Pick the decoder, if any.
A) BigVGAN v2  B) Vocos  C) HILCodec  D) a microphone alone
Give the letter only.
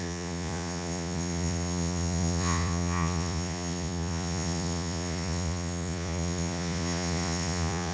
B